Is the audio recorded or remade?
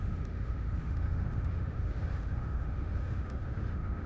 remade